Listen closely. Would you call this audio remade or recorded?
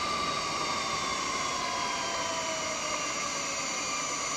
recorded